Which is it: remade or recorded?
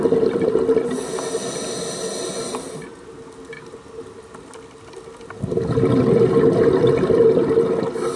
recorded